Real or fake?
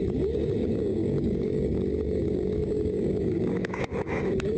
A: fake